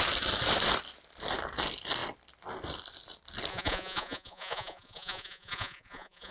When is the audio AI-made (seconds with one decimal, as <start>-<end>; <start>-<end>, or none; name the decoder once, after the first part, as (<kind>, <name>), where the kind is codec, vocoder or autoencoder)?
3.5-6.3 (vocoder, Vocos)